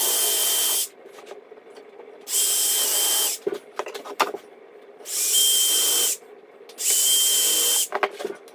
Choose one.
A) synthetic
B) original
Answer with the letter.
B